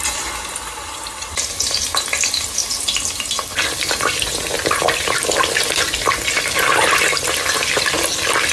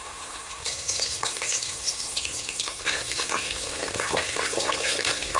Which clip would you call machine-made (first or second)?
second